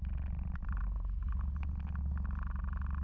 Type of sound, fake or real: real